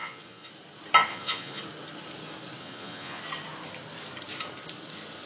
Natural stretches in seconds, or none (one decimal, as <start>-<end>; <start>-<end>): 0.5-1.1; 1.6-2.6; 3.2-5.3